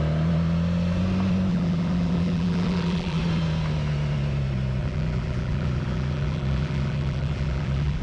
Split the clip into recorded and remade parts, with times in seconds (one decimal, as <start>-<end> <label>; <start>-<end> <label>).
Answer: 0.0-1.5 recorded; 1.5-3.2 remade; 3.2-4.8 recorded; 4.8-8.0 remade